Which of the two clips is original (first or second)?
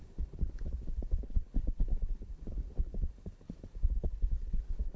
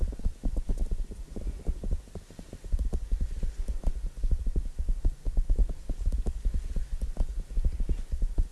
second